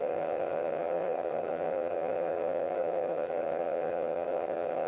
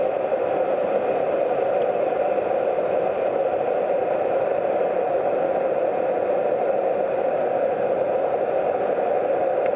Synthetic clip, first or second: first